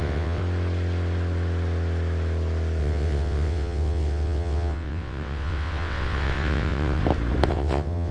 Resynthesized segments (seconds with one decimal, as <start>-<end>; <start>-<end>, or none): 0.0-0.4; 2.8-7.0; 7.5-8.1